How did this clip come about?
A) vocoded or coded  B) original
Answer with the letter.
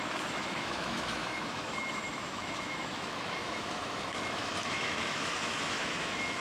A